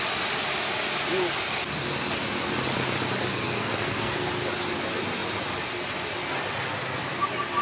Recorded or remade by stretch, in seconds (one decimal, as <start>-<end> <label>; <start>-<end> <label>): 0.0-3.3 recorded; 3.3-4.3 remade; 4.3-7.6 recorded